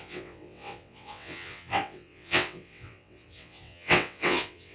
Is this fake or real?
fake